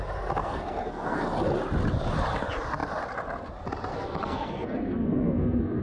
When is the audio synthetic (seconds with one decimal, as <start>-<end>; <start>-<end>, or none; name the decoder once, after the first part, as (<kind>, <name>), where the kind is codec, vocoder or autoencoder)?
0.4-1.2 (codec, SNAC); 3.9-5.8